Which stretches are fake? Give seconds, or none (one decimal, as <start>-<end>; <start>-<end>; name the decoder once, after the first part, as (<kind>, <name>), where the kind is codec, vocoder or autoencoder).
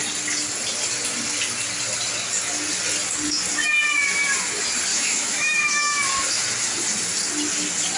4.9-6.0 (autoencoder, DAC-VAE)